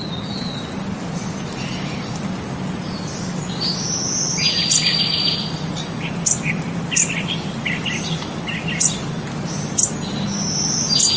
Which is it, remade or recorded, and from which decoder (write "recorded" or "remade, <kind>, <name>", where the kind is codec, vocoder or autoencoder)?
recorded